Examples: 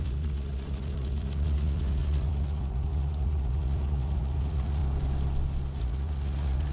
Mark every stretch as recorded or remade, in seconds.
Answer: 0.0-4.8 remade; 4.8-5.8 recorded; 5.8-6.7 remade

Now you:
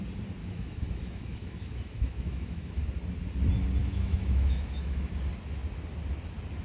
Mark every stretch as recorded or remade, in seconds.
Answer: 0.0-0.4 recorded; 0.4-2.8 remade; 2.8-3.8 recorded; 3.8-5.1 remade; 5.1-6.6 recorded

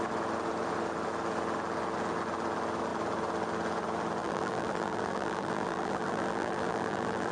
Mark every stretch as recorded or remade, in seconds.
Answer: 0.0-4.2 recorded; 4.2-7.3 remade

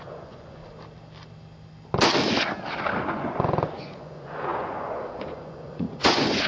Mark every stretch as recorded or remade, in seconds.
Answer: 0.0-0.6 remade; 0.6-3.0 recorded; 3.0-6.5 remade